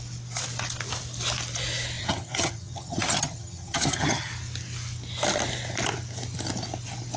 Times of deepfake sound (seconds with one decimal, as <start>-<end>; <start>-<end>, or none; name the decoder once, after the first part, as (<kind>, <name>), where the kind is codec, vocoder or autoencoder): 2.0-4.3 (vocoder, HiFi-GAN)